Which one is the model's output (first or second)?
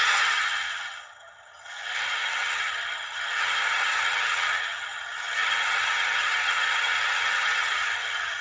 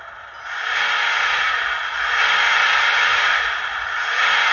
first